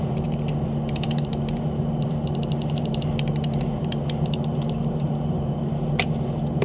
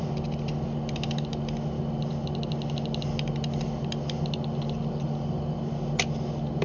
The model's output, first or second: first